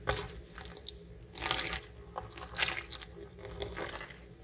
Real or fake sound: real